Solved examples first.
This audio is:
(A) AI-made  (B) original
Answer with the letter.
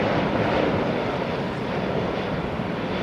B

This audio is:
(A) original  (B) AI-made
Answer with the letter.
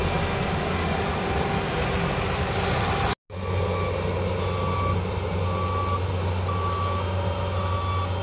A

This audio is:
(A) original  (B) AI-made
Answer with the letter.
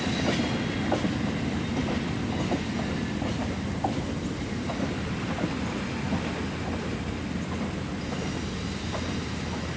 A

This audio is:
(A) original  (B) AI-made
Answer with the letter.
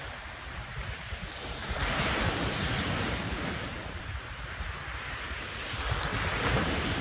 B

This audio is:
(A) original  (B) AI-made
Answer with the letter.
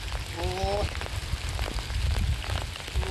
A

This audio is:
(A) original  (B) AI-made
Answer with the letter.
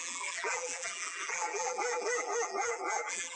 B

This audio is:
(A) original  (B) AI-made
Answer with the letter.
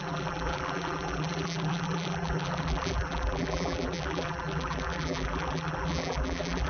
B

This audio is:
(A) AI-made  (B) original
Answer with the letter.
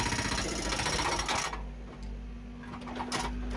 B